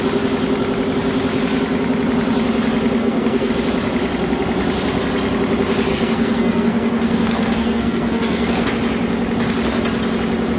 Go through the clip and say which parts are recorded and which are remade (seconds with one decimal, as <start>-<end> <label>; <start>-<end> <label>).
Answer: 0.0-3.0 recorded; 3.0-3.5 remade; 3.5-5.9 recorded; 5.9-8.7 remade; 8.7-10.6 recorded